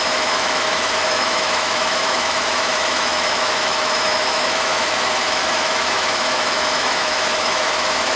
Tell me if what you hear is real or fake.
fake